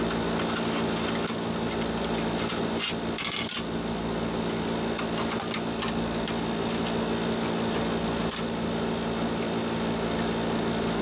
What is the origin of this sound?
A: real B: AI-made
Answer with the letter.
A